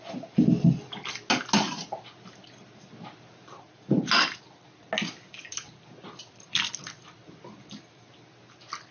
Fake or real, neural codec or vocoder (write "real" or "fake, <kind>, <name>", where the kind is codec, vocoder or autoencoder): real